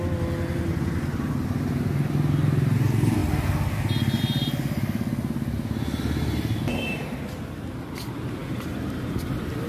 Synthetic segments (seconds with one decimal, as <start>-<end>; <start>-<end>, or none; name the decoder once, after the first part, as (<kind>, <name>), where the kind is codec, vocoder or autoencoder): none